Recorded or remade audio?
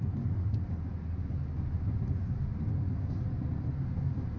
recorded